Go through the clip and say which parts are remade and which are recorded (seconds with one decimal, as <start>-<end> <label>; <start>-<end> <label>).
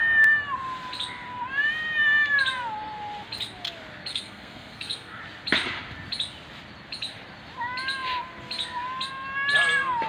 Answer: 0.0-4.1 recorded; 4.1-5.2 remade; 5.2-10.1 recorded